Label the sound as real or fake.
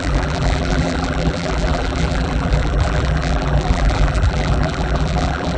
fake